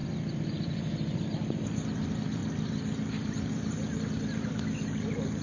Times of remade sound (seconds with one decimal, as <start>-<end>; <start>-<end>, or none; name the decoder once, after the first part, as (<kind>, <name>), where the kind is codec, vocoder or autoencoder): 0.0-5.4 (vocoder, BigVGAN v2)